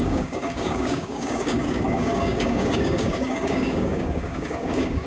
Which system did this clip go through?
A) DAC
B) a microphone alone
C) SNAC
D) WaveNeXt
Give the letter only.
A